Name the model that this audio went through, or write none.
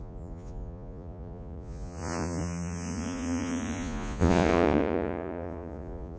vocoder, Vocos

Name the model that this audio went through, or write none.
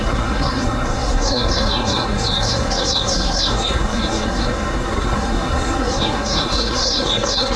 codec, SNAC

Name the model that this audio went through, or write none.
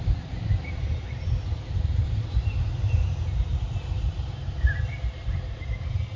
vocoder, BigVGAN v2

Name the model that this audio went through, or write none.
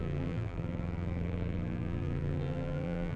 vocoder, BigVGAN v2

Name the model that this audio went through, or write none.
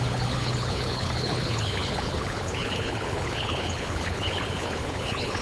codec, HILCodec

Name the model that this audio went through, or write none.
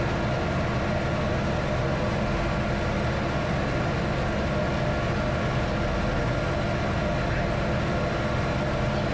none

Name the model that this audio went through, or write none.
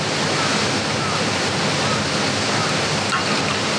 none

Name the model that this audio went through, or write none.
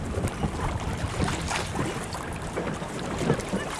none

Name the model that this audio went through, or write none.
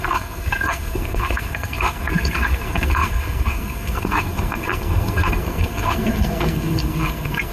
codec, SNAC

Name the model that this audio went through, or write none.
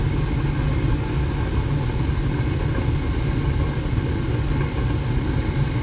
none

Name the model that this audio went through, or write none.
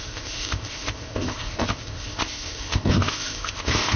codec, ZipCodec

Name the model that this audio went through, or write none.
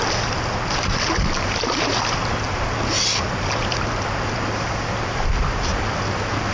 none